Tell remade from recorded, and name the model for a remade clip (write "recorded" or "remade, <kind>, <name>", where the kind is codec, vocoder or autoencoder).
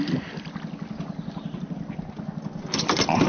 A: recorded